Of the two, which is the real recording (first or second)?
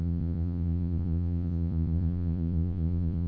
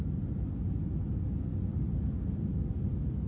second